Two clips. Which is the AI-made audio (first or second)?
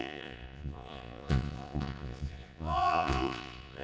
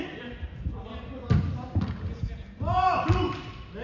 first